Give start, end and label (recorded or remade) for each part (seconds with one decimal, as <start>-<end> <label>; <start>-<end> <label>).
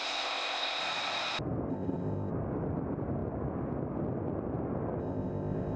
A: 0.0-0.8 remade; 0.8-1.7 recorded; 1.7-2.3 remade; 2.3-5.0 recorded; 5.0-5.8 remade